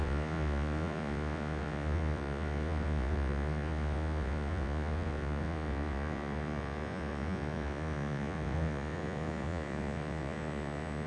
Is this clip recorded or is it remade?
remade